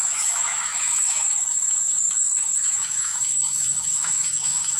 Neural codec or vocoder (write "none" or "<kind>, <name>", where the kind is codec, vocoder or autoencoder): autoencoder, DAC-VAE